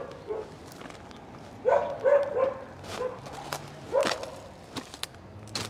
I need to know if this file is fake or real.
real